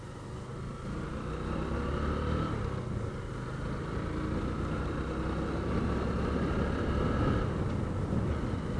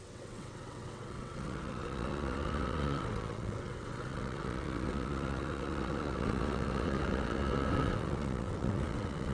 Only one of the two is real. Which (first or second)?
first